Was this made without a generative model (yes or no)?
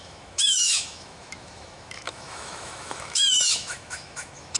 no